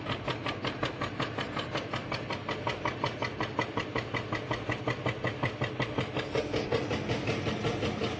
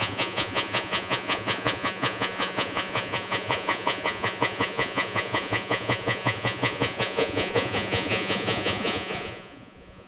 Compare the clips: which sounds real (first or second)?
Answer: first